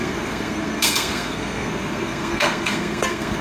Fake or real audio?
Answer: fake